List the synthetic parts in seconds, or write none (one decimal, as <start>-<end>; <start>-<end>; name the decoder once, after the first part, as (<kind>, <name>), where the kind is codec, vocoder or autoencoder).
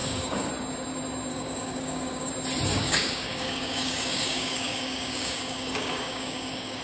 0.0-0.5 (codec, DAC); 1.3-2.3; 2.7-6.8